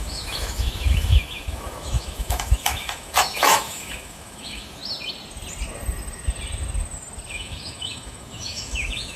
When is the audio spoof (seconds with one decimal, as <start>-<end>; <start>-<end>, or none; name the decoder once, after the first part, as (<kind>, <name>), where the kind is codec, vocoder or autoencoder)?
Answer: 0.0-4.8 (autoencoder, DAC-VAE); 7.3-9.2